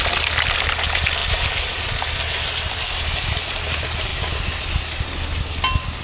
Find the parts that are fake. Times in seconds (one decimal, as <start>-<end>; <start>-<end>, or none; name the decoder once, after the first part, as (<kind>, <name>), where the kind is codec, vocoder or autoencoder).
none